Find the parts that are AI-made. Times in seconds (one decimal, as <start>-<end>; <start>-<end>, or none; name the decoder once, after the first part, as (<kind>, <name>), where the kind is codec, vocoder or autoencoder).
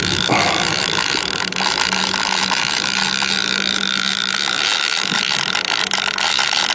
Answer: none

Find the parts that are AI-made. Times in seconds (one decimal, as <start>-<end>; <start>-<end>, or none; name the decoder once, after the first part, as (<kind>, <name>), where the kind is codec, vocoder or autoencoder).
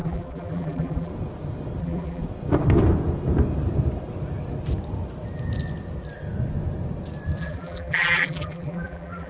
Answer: 0.0-1.1 (vocoder, BigVGAN v2); 1.8-2.2; 7.4-9.3